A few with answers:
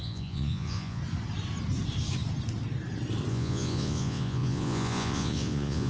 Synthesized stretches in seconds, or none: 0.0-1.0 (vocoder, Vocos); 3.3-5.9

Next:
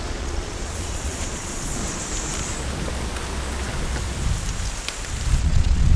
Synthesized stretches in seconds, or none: 0.0-1.8 (vocoder, Vocos); 5.4-6.0

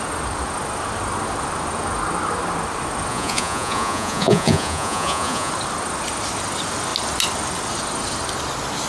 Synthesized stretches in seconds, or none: 3.1-5.5 (vocoder, Vocos)

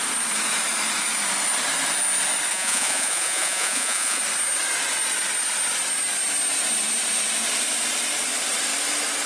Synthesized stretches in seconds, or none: 2.5-4.2 (vocoder, Vocos)

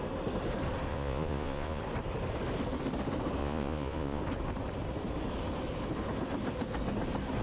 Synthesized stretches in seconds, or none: 0.9-1.8 (vocoder, Vocos); 3.4-4.2